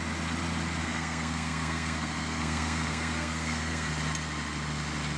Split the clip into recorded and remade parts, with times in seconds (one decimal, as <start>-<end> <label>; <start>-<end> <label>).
0.0-0.8 recorded; 0.8-3.9 remade; 3.9-5.2 recorded